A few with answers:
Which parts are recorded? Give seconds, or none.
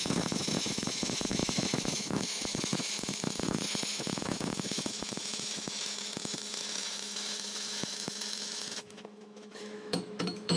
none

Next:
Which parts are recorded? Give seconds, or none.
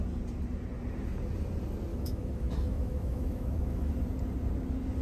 0.0-1.9; 3.9-5.0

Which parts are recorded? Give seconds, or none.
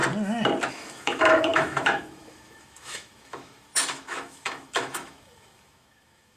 0.0-0.7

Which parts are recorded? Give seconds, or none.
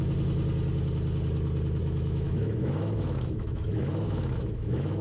0.0-1.8